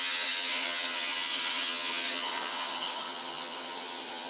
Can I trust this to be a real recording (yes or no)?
no